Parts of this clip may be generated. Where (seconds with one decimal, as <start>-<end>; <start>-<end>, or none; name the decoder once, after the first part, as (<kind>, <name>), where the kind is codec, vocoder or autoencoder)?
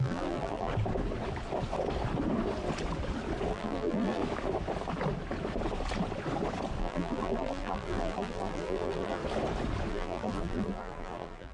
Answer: 0.0-0.7 (vocoder, BigVGAN v2); 3.5-4.2; 6.8-9.2; 9.9-11.5